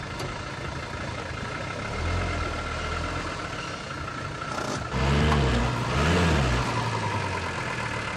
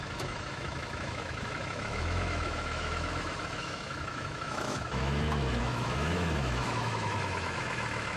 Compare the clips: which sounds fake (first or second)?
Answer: second